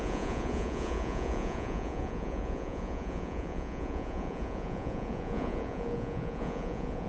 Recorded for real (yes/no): no